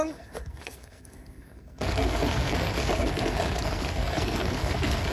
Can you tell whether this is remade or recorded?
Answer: remade